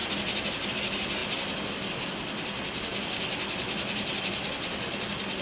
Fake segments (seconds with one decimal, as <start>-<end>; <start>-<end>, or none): none

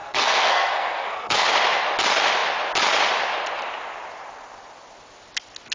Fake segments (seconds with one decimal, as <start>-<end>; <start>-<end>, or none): 0.0-1.5

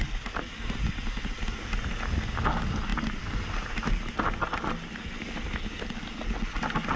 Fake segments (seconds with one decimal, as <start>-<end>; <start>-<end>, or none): none

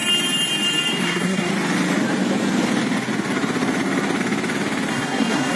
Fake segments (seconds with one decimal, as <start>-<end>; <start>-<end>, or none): 1.0-1.5; 4.9-5.6

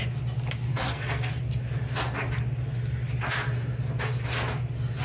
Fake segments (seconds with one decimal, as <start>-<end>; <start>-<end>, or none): 0.7-1.3